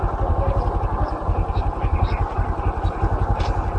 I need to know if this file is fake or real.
real